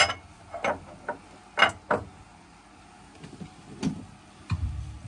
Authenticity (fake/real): real